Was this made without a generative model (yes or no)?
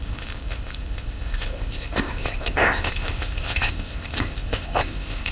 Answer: no